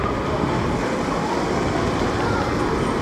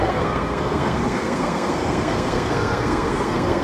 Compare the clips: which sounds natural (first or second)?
first